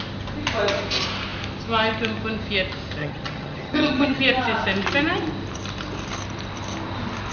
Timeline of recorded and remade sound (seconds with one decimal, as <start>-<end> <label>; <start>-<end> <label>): 0.0-3.0 recorded; 3.0-4.2 remade; 4.2-7.3 recorded